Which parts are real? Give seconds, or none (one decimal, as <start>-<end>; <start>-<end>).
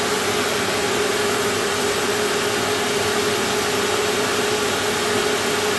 0.0-5.8